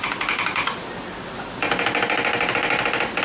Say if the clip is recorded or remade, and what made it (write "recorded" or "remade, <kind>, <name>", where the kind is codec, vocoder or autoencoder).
recorded